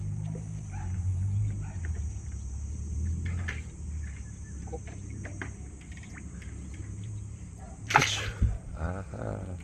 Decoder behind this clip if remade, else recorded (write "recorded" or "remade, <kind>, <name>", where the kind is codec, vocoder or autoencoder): remade, vocoder, BigVGAN v2